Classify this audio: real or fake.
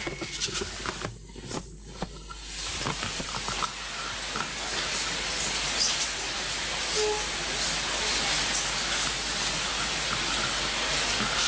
real